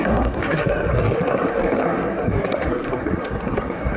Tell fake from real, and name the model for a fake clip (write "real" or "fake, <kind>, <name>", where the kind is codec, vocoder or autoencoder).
fake, codec, SNAC